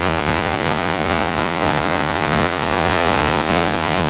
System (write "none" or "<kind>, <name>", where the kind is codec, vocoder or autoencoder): vocoder, Vocos